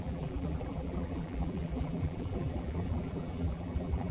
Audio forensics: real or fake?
fake